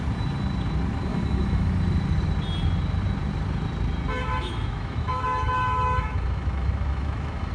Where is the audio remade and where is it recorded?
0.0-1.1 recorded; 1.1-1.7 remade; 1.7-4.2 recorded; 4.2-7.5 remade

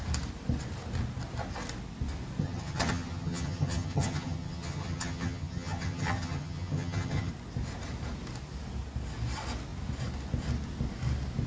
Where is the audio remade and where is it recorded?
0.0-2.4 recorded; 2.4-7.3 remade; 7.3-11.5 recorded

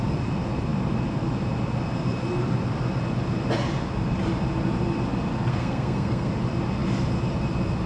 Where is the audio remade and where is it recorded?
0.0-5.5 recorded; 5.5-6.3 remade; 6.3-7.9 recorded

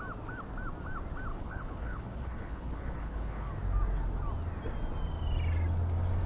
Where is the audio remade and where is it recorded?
0.0-1.3 recorded; 1.3-3.5 remade; 3.5-6.3 recorded